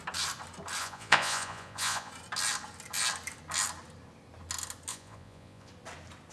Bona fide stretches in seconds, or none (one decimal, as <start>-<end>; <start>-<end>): 0.0-0.8; 2.1-4.9; 5.7-6.3